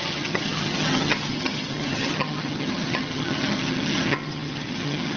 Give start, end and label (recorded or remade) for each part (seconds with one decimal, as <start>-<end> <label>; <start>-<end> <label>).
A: 0.0-5.2 remade